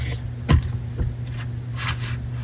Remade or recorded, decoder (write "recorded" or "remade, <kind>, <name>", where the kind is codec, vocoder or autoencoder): recorded